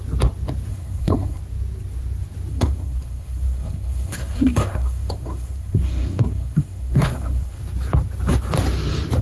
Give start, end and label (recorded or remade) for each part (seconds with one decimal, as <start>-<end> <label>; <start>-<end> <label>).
0.0-0.7 recorded; 0.7-1.4 remade; 1.4-2.5 recorded; 2.5-7.6 remade; 7.6-9.2 recorded